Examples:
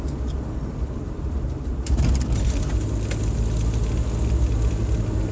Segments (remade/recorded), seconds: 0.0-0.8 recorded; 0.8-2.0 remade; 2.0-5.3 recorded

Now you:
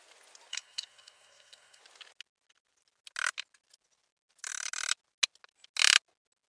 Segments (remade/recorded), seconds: 0.0-0.5 recorded; 0.5-1.8 remade; 1.8-6.5 recorded

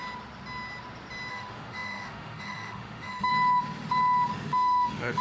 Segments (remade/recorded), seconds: 0.0-1.3 recorded; 1.3-3.3 remade; 3.3-4.3 recorded; 4.3-5.2 remade

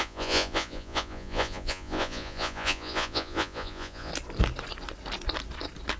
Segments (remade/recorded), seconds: 0.0-4.1 remade; 4.1-6.0 recorded

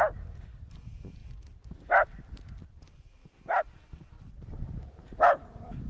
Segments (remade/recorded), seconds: 0.0-5.9 recorded